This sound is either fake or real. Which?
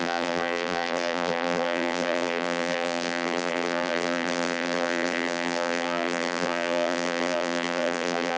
fake